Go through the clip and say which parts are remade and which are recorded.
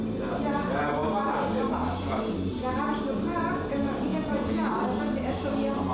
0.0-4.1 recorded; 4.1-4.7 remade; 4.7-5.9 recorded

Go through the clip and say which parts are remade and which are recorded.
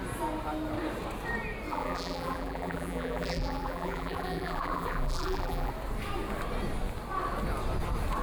0.0-1.7 recorded; 1.7-5.7 remade; 5.7-8.2 recorded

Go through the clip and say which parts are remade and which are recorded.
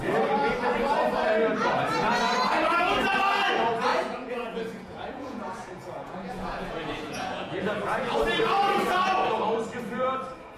0.0-3.9 recorded; 3.9-8.2 remade; 8.2-10.6 recorded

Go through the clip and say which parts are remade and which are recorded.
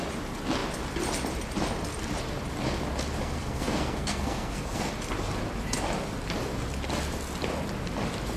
0.0-3.2 recorded; 3.2-4.9 remade; 4.9-8.4 recorded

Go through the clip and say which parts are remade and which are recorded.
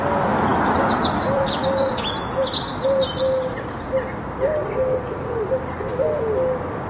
0.0-0.5 recorded; 0.5-1.9 remade; 1.9-6.9 recorded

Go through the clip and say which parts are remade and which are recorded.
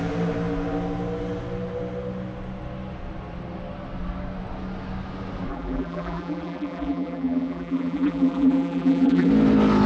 0.0-5.5 recorded; 5.5-9.3 remade; 9.3-9.9 recorded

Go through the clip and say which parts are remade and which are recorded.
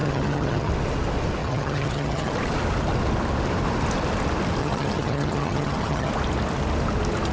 0.0-0.7 remade; 0.7-1.4 recorded; 1.4-2.3 remade; 2.3-4.6 recorded; 4.6-6.1 remade; 6.1-7.3 recorded